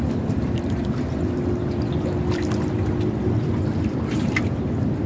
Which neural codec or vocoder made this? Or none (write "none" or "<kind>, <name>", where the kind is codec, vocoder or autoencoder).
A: vocoder, BigVGAN v2